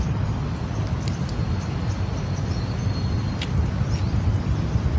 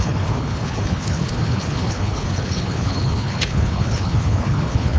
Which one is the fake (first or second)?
second